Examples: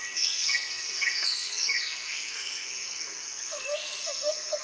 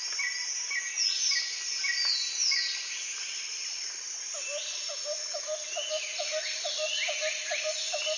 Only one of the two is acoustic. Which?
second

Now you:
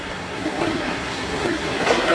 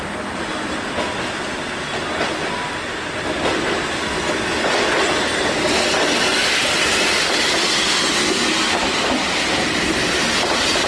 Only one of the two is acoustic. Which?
second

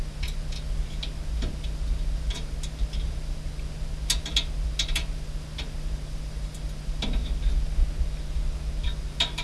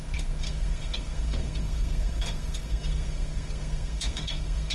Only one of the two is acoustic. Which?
first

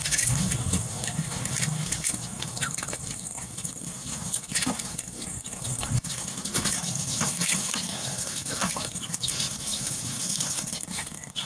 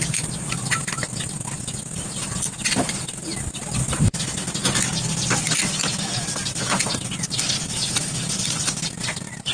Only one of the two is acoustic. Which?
second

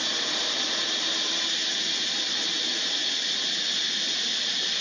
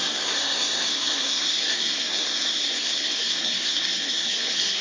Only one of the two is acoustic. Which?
first